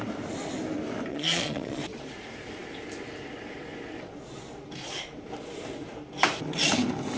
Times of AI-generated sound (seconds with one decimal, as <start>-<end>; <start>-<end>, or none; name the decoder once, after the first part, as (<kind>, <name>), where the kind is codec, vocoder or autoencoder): 1.1-1.8 (vocoder, Vocos)